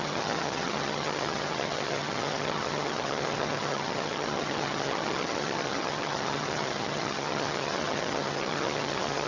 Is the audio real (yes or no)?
no